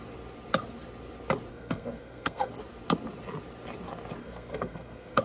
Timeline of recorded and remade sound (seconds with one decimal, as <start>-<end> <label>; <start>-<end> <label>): 0.0-1.5 recorded; 1.5-2.5 remade; 2.5-4.2 recorded; 4.2-5.2 remade